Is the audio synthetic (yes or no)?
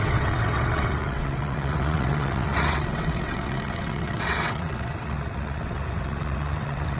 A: yes